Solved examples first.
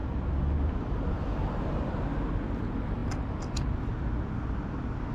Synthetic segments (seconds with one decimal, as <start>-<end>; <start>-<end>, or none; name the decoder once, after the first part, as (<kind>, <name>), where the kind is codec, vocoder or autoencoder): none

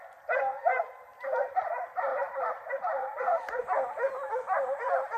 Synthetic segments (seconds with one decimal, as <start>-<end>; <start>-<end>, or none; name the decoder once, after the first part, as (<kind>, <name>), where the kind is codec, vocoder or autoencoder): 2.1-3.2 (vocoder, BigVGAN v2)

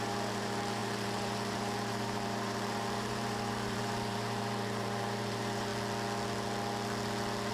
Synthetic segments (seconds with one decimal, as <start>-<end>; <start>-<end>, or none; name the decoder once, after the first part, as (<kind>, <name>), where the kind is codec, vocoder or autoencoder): 0.0-5.7 (vocoder, BigVGAN v2)

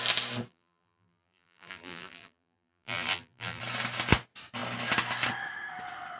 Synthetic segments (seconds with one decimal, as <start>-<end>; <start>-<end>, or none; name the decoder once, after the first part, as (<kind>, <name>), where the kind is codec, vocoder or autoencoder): 0.5-3.6 (vocoder, BigVGAN v2)